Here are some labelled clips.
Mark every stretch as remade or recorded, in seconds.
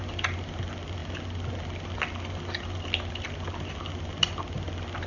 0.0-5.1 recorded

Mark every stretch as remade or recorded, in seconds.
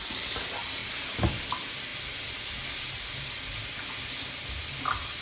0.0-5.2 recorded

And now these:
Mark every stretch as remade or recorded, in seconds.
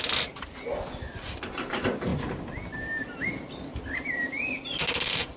0.0-5.4 recorded